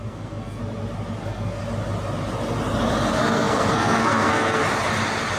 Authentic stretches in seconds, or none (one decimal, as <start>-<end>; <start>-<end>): 0.6-1.2; 1.6-3.1; 4.6-5.4